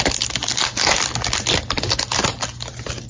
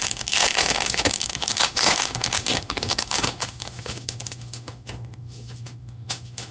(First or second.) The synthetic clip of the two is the second